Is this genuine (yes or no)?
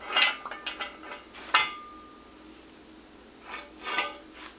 yes